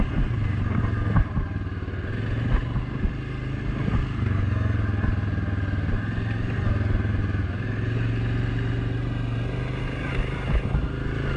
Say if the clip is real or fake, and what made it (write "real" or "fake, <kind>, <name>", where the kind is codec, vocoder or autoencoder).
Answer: real